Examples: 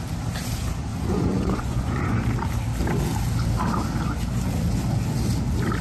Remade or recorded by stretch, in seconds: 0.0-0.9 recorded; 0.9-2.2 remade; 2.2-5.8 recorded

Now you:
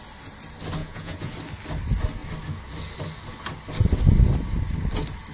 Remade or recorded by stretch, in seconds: 0.0-0.8 recorded; 0.8-1.3 remade; 1.3-5.3 recorded

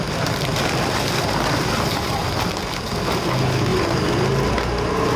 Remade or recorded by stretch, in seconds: 0.0-5.2 recorded

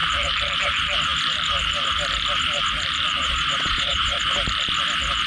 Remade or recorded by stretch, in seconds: 0.0-3.2 recorded; 3.2-4.2 remade; 4.2-5.3 recorded

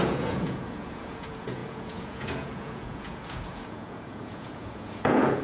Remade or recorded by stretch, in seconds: 0.0-5.4 remade